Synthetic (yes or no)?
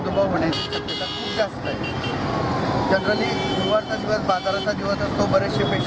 no